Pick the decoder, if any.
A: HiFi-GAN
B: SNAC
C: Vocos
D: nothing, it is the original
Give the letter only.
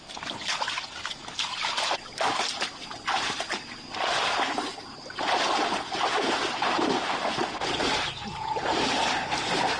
D